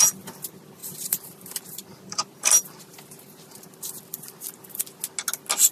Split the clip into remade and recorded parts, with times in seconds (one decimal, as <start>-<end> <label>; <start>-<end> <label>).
0.0-0.8 recorded; 0.8-3.8 remade; 3.8-5.7 recorded